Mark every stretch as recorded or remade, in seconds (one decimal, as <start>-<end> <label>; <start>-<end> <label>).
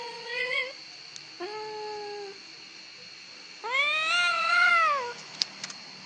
0.0-0.6 remade; 0.6-4.3 recorded; 4.3-4.7 remade; 4.7-6.1 recorded